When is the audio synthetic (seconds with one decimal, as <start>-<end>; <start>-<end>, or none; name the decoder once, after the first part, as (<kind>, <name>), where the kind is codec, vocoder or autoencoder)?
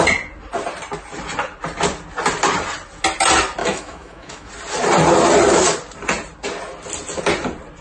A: 3.6-4.5 (autoencoder, DAC-VAE)